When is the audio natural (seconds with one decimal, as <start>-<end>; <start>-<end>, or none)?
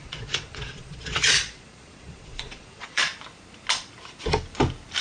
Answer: 3.0-5.0